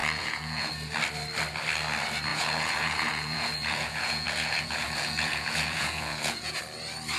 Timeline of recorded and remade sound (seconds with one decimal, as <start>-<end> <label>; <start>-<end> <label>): 0.0-0.7 remade; 0.7-2.3 recorded; 2.3-6.6 remade; 6.6-7.2 recorded